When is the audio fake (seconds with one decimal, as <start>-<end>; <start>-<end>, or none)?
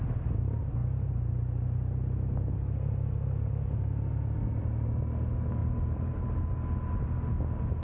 5.6-6.2